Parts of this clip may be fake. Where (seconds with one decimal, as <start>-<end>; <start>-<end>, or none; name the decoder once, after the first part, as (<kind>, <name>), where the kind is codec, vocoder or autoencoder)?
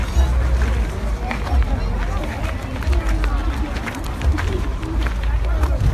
3.4-5.4 (vocoder, BigVGAN v2)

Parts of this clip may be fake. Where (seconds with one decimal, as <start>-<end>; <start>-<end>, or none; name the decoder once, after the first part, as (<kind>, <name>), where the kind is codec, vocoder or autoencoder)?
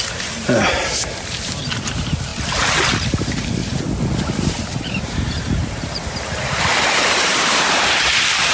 3.6-8.5 (vocoder, BigVGAN v2)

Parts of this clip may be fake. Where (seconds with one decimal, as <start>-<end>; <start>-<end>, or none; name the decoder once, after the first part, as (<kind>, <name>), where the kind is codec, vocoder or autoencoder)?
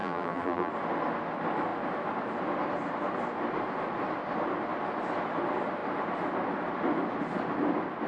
0.0-0.7 (vocoder, BigVGAN v2)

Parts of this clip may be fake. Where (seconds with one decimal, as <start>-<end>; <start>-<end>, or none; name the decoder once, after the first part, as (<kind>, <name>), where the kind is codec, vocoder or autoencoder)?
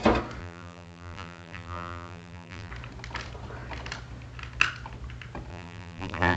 0.4-2.7 (vocoder, BigVGAN v2); 5.5-6.4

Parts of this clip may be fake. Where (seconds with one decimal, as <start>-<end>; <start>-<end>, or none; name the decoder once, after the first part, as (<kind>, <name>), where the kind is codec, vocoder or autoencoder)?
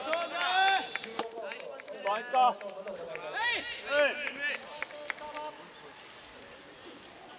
none